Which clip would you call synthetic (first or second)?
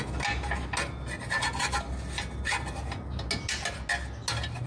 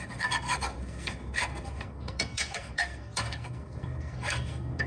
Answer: second